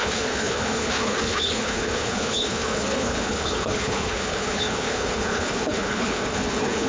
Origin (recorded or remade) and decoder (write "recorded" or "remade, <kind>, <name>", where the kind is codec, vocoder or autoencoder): remade, codec, HILCodec